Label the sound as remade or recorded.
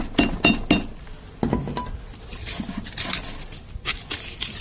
recorded